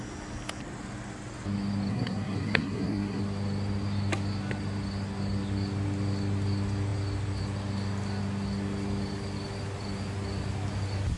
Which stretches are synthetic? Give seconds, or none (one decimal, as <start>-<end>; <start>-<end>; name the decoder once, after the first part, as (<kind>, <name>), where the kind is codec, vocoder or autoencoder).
1.9-3.2 (codec, SNAC)